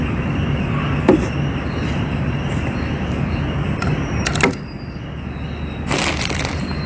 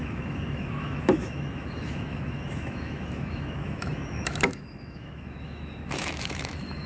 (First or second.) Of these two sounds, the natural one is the first